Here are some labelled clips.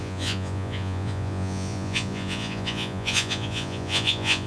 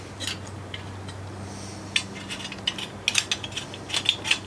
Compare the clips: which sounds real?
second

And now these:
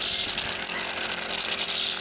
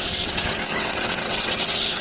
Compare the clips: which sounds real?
first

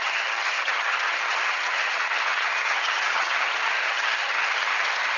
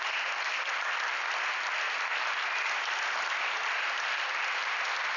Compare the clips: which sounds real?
second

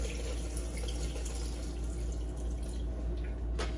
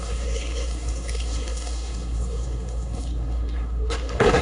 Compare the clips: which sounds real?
first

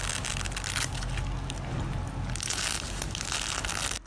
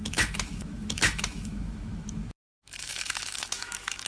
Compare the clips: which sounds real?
first